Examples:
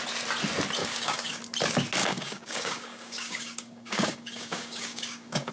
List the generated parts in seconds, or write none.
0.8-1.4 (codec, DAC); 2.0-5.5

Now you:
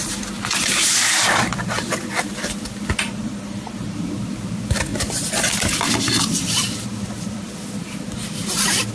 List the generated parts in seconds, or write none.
none

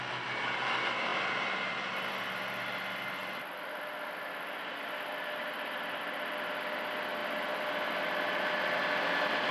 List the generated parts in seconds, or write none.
none